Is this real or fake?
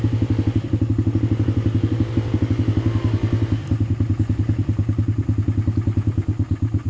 real